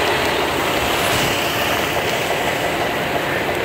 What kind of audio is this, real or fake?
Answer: real